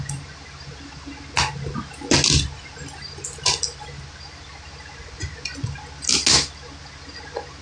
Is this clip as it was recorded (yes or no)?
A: yes